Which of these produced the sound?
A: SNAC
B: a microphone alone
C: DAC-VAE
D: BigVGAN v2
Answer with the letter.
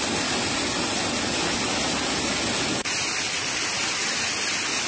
B